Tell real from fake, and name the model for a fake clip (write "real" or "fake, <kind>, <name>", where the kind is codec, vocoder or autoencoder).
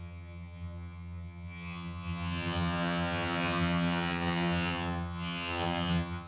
fake, vocoder, HiFi-GAN